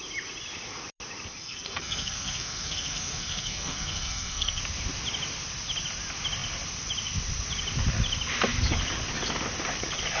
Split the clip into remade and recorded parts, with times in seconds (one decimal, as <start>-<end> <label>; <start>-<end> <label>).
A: 0.0-1.4 recorded; 1.4-4.6 remade; 4.6-10.2 recorded